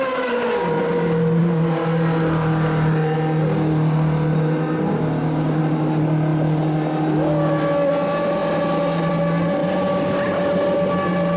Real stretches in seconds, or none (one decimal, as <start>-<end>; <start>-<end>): 0.0-11.4